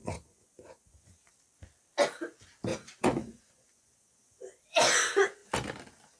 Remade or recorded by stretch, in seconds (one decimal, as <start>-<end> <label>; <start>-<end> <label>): 0.0-1.3 remade; 1.3-2.7 recorded; 2.7-4.6 remade; 4.6-6.2 recorded